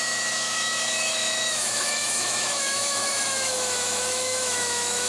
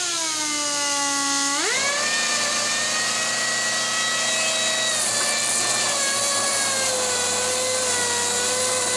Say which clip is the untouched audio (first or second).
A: second